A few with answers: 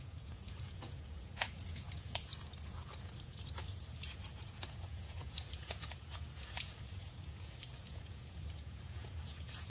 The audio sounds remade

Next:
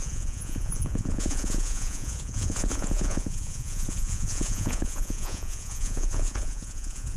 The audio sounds remade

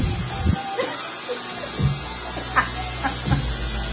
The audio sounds recorded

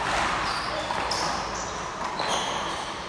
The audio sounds recorded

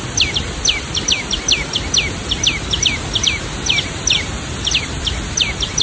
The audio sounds recorded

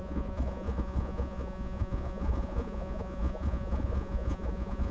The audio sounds remade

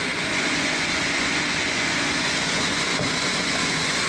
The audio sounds remade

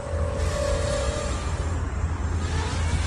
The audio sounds recorded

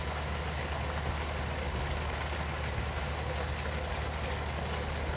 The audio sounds recorded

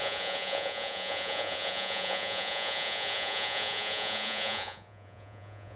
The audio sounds remade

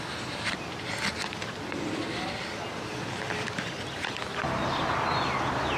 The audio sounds recorded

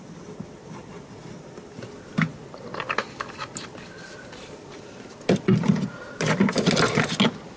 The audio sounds recorded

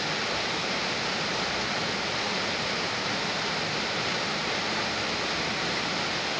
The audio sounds recorded